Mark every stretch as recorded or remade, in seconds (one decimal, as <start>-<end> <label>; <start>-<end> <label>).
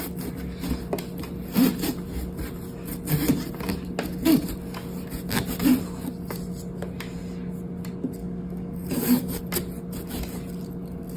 0.0-8.2 recorded; 8.2-9.4 remade; 9.4-11.2 recorded